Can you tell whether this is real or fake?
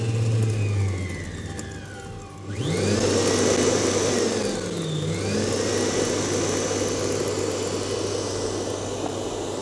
real